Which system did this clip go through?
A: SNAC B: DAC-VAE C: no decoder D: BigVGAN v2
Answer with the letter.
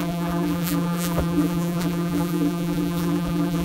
D